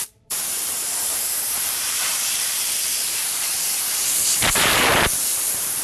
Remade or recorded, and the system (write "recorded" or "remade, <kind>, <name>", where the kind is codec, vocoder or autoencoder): remade, vocoder, BigVGAN v2